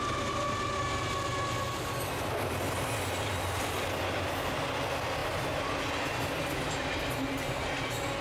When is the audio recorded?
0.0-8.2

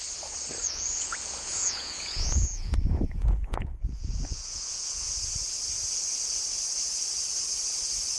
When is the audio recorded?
0.0-0.6; 5.1-8.2

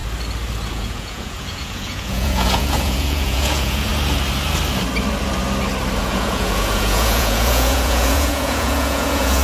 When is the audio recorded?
0.0-0.7; 3.9-6.0

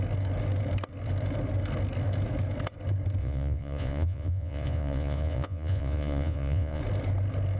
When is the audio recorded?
0.0-3.2; 6.8-7.6